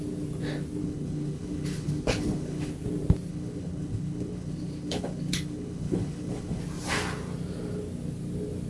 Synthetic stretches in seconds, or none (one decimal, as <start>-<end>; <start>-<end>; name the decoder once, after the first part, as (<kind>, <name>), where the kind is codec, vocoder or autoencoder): 0.8-2.7 (codec, HILCodec); 3.3-6.6

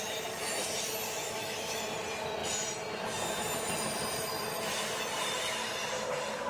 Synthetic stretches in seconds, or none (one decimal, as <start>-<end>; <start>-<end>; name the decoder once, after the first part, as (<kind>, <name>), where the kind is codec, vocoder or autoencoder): 1.2-1.8 (autoencoder, DAC-VAE)

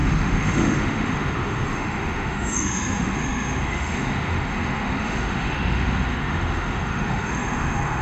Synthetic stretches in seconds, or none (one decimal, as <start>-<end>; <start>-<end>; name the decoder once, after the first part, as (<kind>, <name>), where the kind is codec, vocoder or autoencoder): 0.0-8.0 (autoencoder, DAC-VAE)

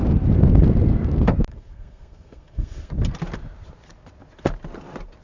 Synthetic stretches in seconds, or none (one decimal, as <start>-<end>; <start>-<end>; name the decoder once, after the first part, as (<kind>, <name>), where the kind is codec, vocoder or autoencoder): 1.5-2.9 (codec, SNAC)

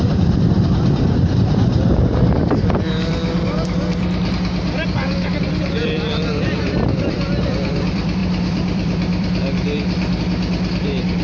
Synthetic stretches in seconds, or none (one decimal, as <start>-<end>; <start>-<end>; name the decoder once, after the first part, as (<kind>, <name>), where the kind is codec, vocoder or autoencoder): 0.0-3.2 (vocoder, BigVGAN v2); 5.4-11.2

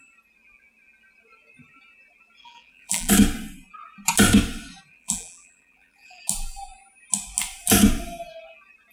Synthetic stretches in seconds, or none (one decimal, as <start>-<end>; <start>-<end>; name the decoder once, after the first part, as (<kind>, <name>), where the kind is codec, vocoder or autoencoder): 2.4-3.1 (vocoder, BigVGAN v2); 4.9-6.2

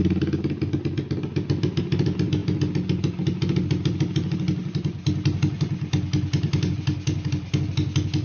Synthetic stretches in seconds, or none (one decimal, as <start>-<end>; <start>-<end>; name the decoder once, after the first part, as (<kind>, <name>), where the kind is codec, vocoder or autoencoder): none

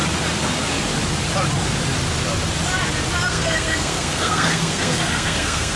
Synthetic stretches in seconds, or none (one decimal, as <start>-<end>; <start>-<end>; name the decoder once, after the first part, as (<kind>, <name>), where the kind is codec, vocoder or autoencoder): 3.3-5.8 (codec, SNAC)